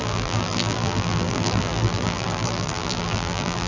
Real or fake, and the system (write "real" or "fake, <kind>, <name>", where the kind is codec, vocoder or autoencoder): fake, vocoder, BigVGAN v2